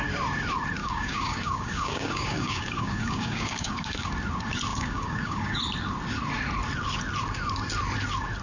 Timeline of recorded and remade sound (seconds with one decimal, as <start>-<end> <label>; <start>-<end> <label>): 0.0-0.8 recorded; 0.8-4.1 remade; 4.1-4.7 recorded; 4.7-5.6 remade; 5.6-8.4 recorded